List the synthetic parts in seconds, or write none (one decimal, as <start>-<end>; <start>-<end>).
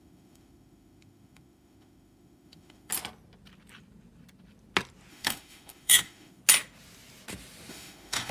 0.0-2.9; 5.1-6.4; 7.7-8.3